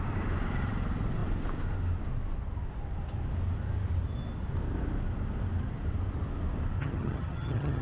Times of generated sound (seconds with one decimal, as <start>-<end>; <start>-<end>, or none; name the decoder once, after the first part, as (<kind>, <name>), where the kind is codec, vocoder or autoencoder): 6.8-7.8 (vocoder, HiFi-GAN)